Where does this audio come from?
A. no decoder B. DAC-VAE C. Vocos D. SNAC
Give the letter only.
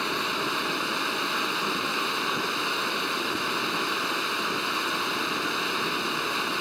A